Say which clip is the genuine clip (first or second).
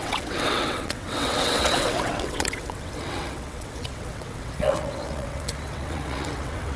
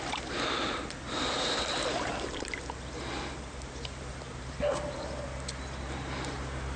second